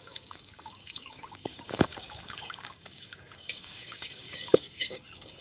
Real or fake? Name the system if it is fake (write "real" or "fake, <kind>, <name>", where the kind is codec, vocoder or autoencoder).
fake, codec, DAC